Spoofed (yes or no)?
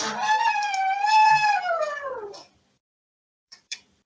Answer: yes